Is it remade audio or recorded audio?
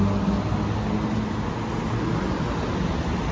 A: recorded